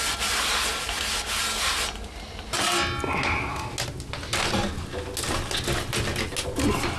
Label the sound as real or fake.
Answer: real